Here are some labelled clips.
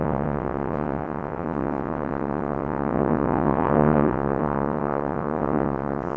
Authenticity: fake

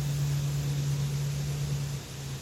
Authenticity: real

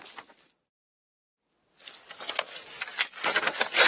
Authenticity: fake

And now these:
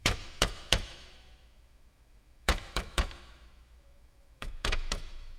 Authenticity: fake